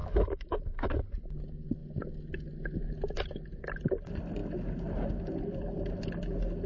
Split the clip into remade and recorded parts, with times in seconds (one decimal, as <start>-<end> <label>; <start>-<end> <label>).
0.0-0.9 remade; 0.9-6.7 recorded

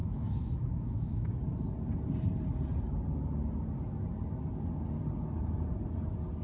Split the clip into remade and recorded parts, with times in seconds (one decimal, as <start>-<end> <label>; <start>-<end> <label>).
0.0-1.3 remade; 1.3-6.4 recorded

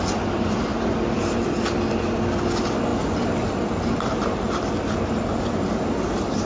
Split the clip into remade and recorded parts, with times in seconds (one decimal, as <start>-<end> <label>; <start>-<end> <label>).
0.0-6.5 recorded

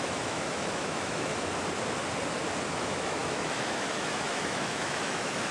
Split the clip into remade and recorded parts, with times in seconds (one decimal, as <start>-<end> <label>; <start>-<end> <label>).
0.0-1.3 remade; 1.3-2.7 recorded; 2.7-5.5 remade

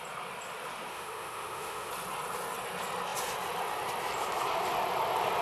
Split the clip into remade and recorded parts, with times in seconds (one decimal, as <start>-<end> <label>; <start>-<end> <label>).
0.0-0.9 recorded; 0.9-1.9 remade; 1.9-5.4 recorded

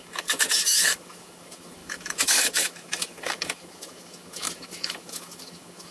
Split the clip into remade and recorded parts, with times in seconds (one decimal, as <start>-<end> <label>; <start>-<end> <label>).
0.0-5.9 remade

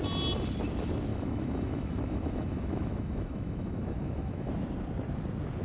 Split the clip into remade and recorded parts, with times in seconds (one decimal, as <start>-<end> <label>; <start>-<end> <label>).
0.0-1.1 recorded; 1.1-4.5 remade; 4.5-5.6 recorded

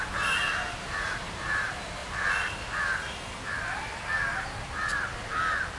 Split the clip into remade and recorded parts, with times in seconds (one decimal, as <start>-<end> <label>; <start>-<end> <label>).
0.0-5.8 recorded